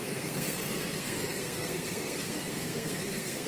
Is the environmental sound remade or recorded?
remade